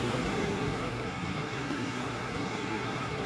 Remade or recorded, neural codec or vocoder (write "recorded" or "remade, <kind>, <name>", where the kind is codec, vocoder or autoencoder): remade, codec, SNAC